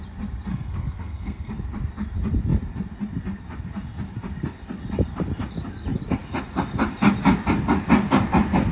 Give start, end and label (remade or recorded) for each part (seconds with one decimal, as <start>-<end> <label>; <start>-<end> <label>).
0.0-0.5 recorded; 0.5-1.5 remade; 1.5-8.7 recorded